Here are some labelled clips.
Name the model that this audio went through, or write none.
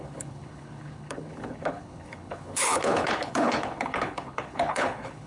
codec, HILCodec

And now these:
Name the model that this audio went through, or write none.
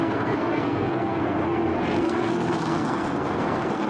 codec, SNAC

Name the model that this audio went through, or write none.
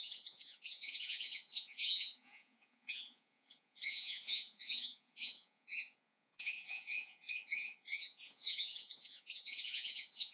vocoder, Vocos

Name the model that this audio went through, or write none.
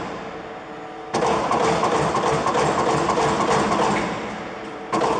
none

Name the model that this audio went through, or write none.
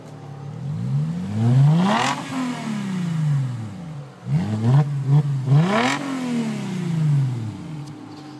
none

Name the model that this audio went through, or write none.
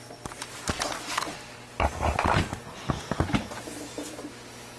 none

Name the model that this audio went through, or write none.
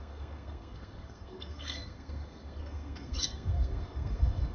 codec, SNAC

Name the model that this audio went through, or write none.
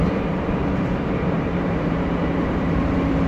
vocoder, BigVGAN v2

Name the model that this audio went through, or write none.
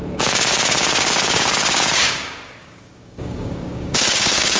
codec, DAC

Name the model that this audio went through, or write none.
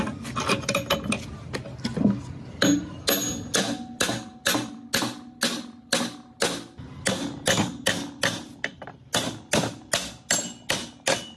none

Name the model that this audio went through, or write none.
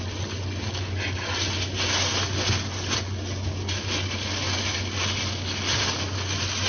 none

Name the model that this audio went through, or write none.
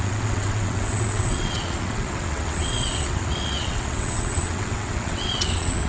vocoder, WaveNeXt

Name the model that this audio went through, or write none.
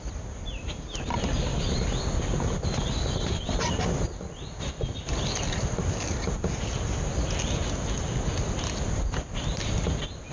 none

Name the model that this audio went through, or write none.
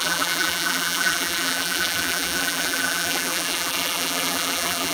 vocoder, BigVGAN v2